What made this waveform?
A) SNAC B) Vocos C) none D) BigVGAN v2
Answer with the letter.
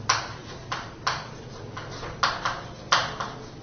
C